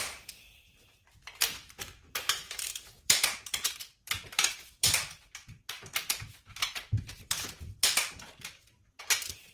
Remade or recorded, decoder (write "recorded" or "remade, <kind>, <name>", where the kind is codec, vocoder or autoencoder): remade, vocoder, BigVGAN v2